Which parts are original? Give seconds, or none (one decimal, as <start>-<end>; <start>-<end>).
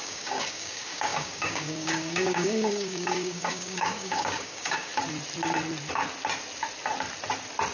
4.9-7.7